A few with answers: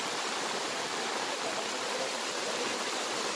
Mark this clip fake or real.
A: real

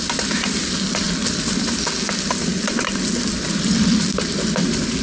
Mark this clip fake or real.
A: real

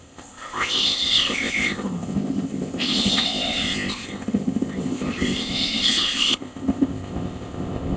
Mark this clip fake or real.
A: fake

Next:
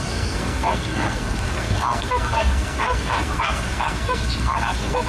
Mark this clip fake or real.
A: fake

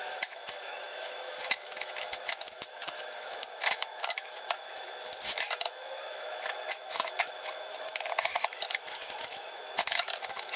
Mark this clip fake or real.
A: fake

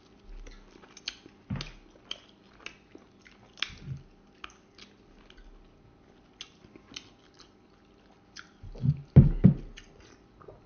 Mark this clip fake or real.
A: real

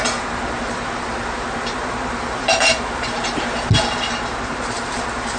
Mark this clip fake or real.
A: fake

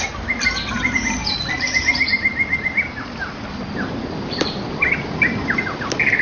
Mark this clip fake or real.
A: real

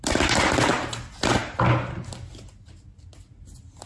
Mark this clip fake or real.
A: real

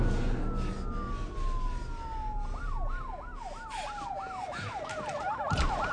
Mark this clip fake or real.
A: real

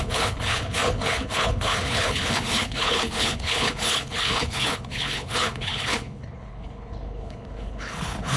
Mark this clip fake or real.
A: fake